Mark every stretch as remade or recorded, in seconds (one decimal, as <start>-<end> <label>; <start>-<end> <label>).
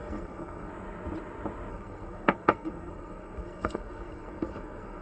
0.0-0.7 remade; 0.7-1.7 recorded; 1.7-5.0 remade